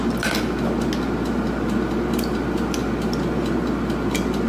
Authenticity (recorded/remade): recorded